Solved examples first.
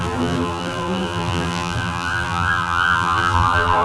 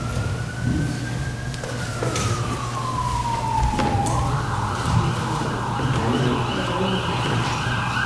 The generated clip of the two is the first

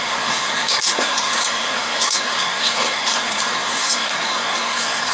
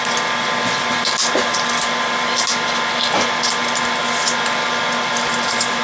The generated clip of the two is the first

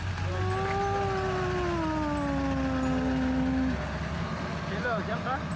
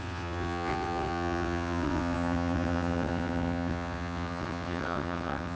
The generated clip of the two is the second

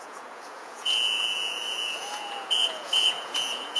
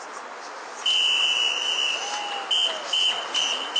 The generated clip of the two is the first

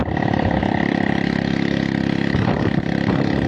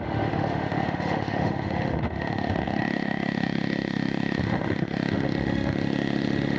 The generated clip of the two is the second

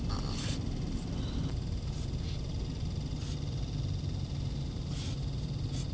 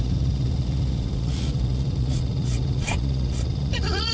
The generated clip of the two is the second